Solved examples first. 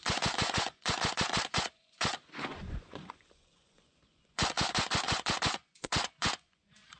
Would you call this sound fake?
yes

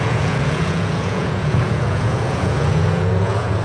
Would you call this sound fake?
yes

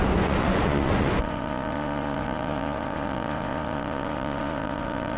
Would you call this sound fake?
yes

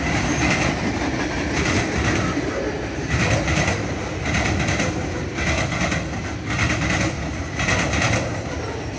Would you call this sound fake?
no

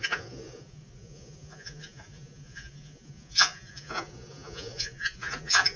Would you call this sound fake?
yes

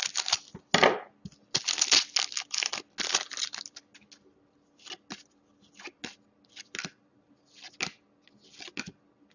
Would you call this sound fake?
no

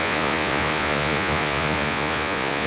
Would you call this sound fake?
yes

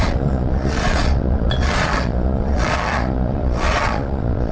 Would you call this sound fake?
yes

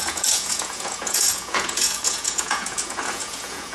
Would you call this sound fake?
yes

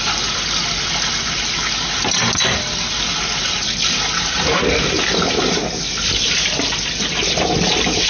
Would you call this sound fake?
no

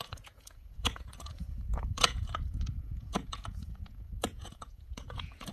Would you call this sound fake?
yes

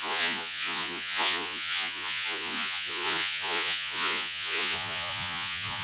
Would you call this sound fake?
yes